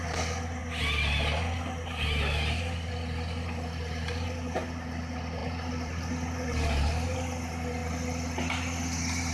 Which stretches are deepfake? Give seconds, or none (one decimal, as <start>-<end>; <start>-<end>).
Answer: 5.4-6.1